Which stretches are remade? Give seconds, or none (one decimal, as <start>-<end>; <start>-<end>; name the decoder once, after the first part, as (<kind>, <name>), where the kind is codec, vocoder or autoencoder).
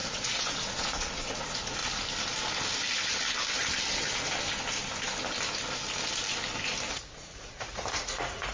0.0-1.8 (vocoder, Vocos); 6.9-8.5